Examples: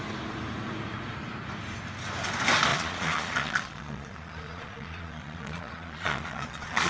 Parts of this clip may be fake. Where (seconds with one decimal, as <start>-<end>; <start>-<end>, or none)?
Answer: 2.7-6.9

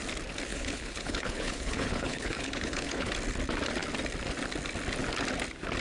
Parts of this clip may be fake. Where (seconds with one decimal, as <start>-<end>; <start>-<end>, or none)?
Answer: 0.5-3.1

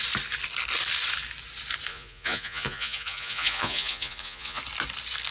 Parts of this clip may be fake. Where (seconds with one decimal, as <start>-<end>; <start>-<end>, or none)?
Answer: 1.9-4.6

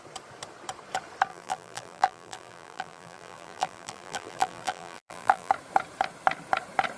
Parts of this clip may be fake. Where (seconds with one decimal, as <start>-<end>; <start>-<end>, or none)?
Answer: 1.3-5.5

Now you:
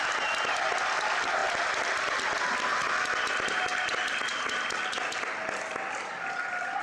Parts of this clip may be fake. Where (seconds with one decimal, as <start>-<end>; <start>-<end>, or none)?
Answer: none

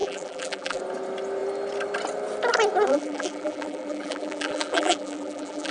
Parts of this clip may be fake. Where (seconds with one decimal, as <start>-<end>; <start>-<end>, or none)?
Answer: 0.0-0.8; 2.9-5.7